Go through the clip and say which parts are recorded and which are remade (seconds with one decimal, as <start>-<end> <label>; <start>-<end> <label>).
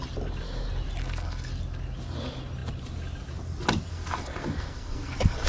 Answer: 0.0-1.0 recorded; 1.0-1.5 remade; 1.5-3.9 recorded; 3.9-5.5 remade